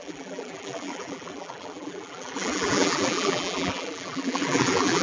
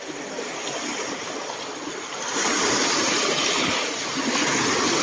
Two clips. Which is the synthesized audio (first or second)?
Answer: first